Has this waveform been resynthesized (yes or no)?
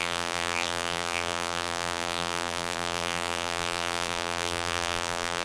yes